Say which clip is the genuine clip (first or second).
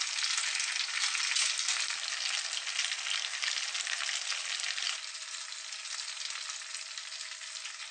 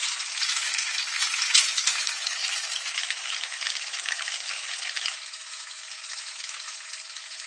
first